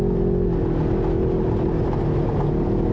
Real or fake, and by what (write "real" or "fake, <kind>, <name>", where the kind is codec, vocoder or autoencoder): real